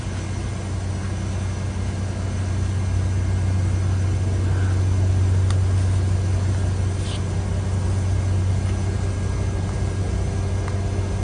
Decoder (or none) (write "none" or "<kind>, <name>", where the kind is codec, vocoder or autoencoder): none